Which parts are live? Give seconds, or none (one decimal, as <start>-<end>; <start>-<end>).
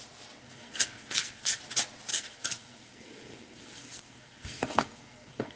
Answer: 0.0-0.4; 1.6-2.1